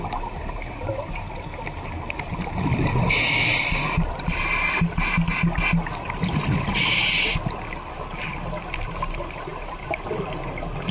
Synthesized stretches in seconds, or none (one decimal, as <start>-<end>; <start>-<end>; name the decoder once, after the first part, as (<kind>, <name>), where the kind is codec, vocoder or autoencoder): none